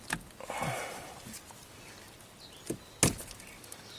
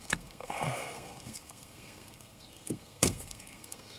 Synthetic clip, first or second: second